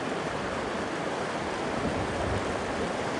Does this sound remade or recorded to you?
recorded